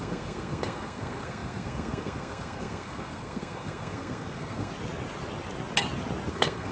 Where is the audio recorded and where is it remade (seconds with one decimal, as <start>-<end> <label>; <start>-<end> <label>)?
0.0-4.7 remade; 4.7-6.3 recorded; 6.3-6.7 remade